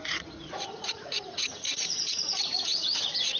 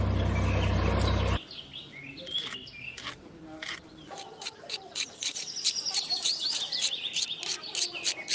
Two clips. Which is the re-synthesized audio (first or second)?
first